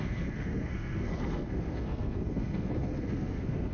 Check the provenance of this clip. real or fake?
fake